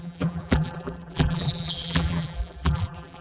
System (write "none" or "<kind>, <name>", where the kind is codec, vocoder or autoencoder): vocoder, BigVGAN v2